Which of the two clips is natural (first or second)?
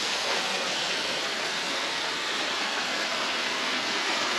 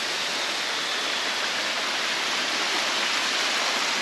second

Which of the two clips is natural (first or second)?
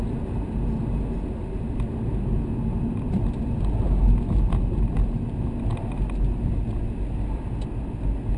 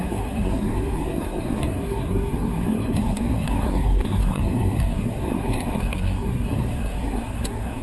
first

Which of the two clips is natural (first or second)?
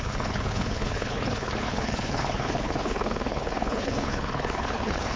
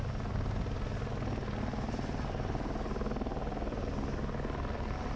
second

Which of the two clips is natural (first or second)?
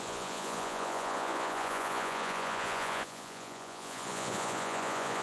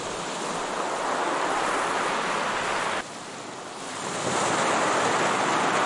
second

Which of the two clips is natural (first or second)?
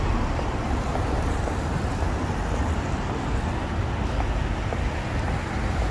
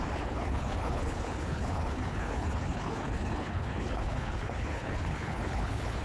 first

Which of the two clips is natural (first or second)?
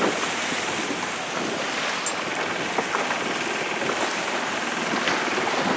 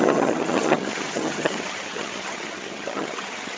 first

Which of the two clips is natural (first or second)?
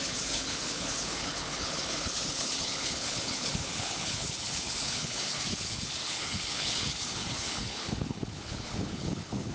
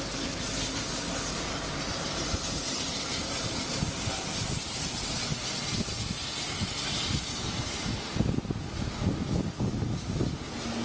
second